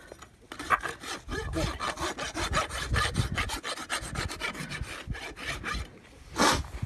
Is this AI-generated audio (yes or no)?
no